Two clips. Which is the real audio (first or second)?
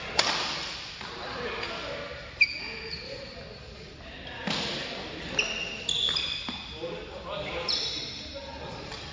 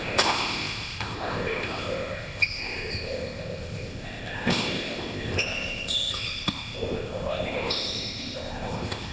first